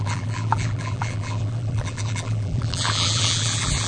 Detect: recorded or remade remade